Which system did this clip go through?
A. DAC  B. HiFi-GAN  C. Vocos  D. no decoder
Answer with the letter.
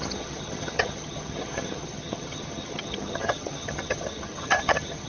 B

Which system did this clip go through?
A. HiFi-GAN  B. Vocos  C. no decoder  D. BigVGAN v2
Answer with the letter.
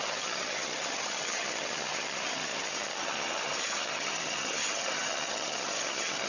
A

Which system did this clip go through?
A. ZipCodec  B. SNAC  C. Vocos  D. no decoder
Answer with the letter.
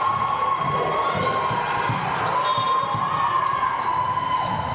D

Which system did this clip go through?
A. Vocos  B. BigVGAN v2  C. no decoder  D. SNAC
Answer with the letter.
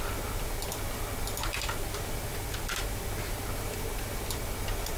C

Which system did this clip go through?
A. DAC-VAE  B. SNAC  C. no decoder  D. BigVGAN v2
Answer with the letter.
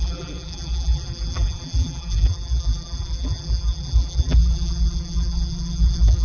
D